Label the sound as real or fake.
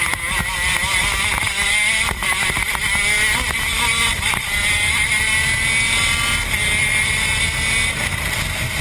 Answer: real